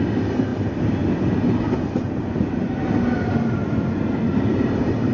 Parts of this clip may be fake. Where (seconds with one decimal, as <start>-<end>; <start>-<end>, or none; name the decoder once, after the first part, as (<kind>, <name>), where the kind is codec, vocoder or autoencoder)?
none